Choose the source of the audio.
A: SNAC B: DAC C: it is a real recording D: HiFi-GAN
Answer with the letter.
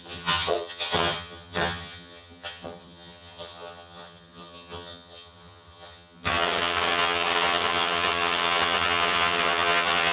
D